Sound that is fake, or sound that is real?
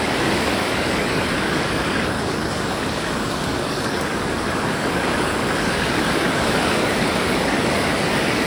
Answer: fake